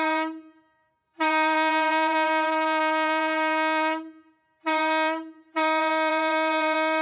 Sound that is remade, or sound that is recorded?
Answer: remade